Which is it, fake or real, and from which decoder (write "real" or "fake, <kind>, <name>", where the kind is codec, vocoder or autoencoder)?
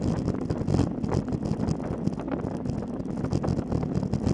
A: real